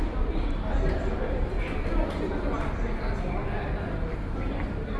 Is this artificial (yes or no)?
no